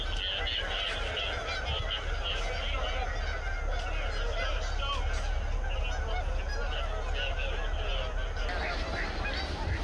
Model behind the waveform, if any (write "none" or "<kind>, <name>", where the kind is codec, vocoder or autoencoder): none